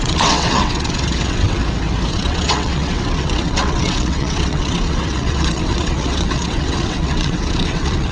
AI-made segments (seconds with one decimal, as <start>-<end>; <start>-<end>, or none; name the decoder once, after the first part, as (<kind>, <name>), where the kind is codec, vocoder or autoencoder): 0.0-1.6 (vocoder, WaveNeXt); 2.1-8.1